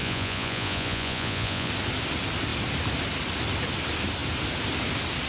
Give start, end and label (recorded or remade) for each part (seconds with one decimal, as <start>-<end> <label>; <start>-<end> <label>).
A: 0.0-1.7 remade; 1.7-5.3 recorded